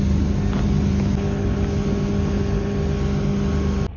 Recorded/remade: recorded